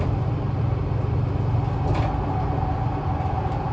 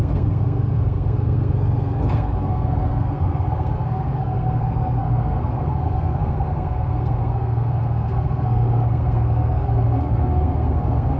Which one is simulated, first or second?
second